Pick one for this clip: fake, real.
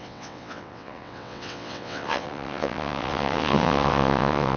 fake